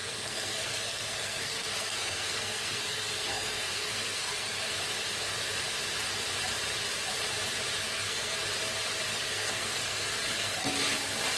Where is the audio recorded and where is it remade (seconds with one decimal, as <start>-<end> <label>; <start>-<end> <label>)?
0.0-4.8 remade; 4.8-7.8 recorded; 7.8-8.4 remade; 8.4-9.1 recorded; 9.1-10.7 remade; 10.7-11.4 recorded

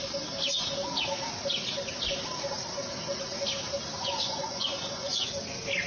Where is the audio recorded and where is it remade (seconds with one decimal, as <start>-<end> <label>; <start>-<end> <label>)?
0.0-4.0 recorded; 4.0-5.2 remade; 5.2-5.9 recorded